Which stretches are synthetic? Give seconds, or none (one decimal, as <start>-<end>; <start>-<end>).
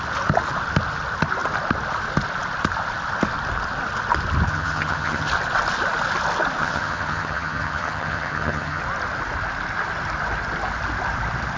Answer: 4.5-5.3; 6.6-8.8